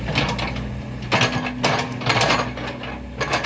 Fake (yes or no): no